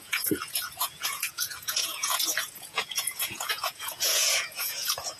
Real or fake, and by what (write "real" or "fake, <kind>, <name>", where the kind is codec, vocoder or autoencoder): fake, vocoder, Vocos